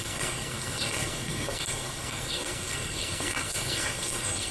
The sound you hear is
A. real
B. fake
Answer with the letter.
B